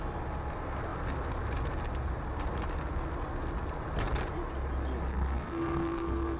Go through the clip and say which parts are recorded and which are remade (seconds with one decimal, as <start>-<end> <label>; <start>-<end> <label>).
0.0-5.1 recorded; 5.1-6.4 remade